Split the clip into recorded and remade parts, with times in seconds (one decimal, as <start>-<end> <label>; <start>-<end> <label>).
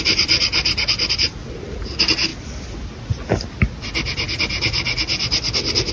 0.0-5.9 recorded